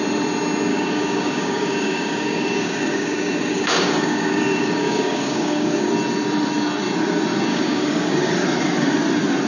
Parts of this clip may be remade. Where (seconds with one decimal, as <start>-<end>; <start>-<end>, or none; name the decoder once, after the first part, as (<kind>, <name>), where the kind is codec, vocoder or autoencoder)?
0.7-5.9 (codec, DAC); 7.5-8.3

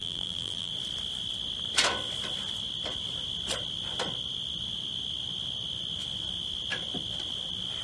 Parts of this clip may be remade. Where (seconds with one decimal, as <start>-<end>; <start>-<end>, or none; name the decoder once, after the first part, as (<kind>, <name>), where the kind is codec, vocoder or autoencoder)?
0.0-0.7 (vocoder, BigVGAN v2)

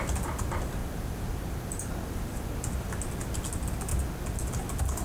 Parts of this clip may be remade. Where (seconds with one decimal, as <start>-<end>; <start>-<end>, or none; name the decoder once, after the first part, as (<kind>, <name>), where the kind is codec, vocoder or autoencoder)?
0.8-1.9 (vocoder, BigVGAN v2)

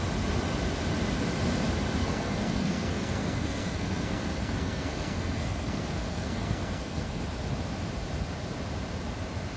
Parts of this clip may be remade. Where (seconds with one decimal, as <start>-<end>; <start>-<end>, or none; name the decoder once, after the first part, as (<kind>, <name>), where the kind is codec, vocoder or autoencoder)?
2.0-7.2 (codec, SNAC)